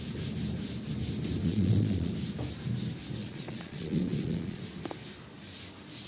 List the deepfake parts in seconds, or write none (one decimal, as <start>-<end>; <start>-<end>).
1.4-2.1; 3.2-4.6

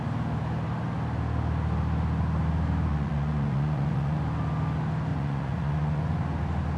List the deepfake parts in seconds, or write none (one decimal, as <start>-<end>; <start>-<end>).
2.9-4.2; 5.1-6.0

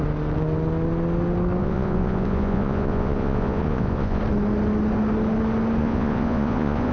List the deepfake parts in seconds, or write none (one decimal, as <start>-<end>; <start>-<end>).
1.6-4.2; 5.8-6.9

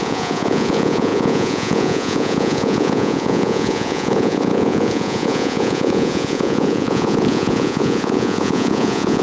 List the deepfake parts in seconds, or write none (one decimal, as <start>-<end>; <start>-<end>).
0.0-9.2

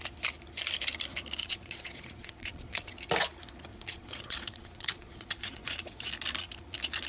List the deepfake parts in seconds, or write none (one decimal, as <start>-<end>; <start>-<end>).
1.4-2.9; 3.7-6.1

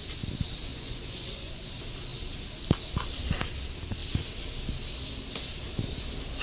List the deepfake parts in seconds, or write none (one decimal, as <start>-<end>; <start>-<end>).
0.7-1.7